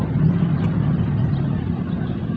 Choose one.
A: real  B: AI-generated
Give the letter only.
A